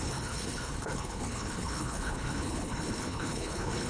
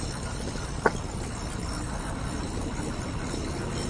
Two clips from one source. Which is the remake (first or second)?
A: first